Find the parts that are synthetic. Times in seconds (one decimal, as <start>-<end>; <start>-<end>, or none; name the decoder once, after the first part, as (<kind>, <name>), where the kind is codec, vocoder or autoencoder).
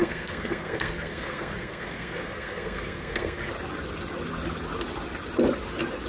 0.0-3.5 (codec, SNAC)